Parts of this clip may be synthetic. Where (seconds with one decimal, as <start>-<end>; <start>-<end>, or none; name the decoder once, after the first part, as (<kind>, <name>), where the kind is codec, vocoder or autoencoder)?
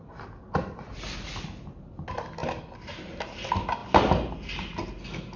none